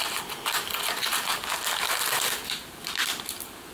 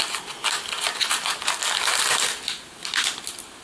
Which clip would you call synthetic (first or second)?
first